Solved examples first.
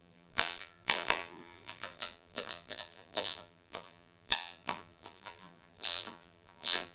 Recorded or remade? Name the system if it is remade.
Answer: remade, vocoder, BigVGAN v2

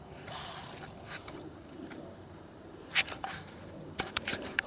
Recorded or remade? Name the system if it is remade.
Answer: remade, vocoder, BigVGAN v2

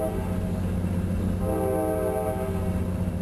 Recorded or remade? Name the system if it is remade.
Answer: recorded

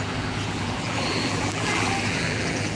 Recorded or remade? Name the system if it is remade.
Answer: remade, vocoder, BigVGAN v2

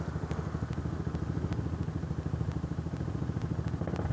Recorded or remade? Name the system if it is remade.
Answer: recorded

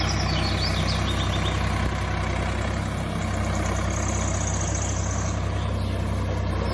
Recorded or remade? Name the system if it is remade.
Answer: recorded